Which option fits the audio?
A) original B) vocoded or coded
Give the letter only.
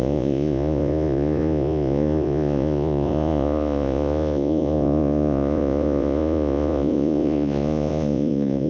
B